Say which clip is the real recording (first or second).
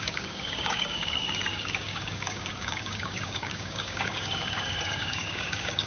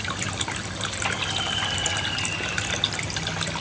second